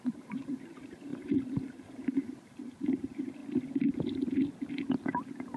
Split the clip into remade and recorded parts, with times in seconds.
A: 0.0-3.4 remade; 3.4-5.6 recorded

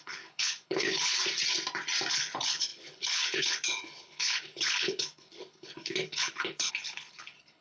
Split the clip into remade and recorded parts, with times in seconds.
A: 0.0-1.2 remade; 1.2-2.1 recorded; 2.1-7.6 remade

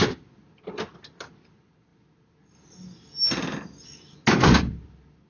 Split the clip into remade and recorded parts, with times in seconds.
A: 0.0-5.3 recorded

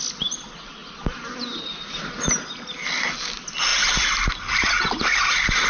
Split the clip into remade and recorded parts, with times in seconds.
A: 0.0-0.8 recorded; 0.8-2.3 remade; 2.3-5.7 recorded

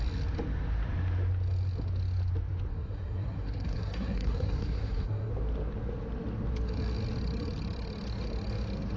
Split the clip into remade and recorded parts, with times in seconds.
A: 0.0-2.7 recorded; 2.7-5.3 remade; 5.3-9.0 recorded

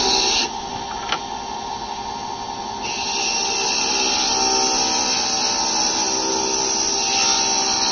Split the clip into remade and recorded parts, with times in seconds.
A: 0.0-7.9 recorded

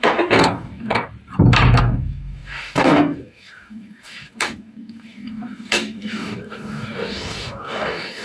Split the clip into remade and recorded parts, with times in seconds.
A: 0.0-1.1 remade; 1.1-1.8 recorded; 1.8-8.2 remade